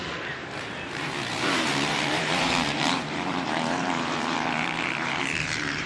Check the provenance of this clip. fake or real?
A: fake